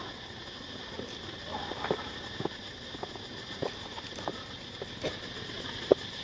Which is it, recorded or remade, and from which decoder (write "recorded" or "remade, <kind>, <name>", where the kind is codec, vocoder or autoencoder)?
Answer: recorded